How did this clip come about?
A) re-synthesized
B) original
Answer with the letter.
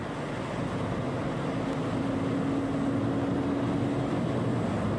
B